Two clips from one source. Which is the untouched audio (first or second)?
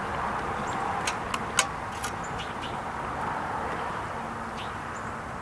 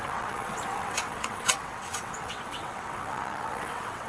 first